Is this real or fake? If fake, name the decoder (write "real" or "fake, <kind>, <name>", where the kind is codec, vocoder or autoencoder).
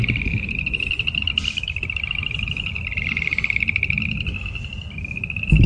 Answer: real